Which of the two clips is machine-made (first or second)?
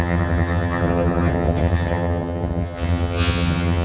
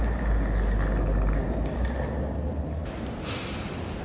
first